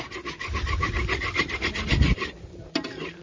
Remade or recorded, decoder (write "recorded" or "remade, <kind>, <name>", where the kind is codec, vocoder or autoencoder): recorded